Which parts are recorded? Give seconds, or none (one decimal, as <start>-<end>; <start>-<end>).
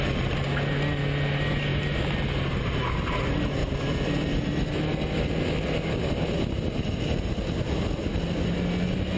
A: 0.0-3.6; 4.6-9.2